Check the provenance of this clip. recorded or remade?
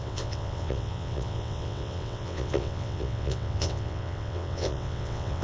remade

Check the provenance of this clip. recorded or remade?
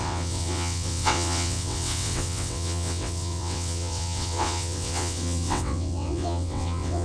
remade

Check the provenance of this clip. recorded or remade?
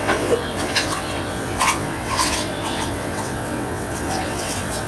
remade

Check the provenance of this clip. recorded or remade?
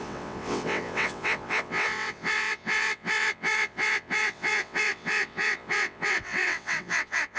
remade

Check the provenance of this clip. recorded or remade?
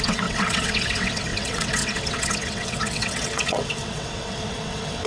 remade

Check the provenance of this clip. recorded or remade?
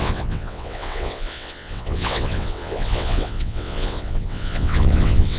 remade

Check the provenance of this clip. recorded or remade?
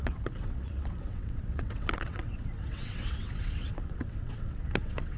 remade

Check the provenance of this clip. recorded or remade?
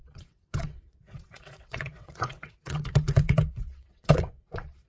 remade